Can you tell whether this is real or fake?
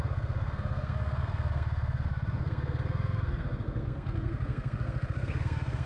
fake